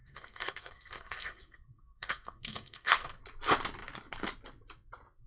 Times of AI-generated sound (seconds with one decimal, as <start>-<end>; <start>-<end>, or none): 0.0-3.2